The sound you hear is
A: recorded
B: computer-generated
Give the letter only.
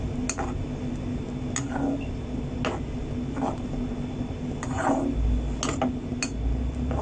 A